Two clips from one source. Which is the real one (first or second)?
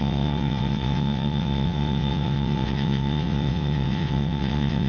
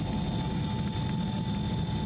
second